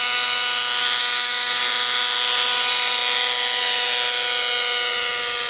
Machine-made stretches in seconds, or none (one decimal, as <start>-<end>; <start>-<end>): 1.0-1.6